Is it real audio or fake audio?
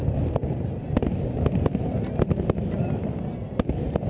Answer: real